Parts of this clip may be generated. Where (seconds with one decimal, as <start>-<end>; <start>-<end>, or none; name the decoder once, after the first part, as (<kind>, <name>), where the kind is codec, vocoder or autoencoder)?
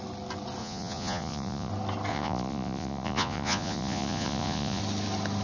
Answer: 0.6-1.7 (vocoder, Vocos); 2.1-4.8